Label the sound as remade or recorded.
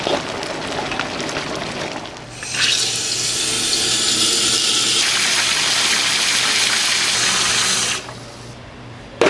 recorded